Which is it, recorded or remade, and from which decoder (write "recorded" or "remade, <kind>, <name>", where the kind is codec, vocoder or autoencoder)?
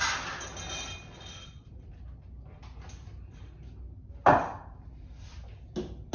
recorded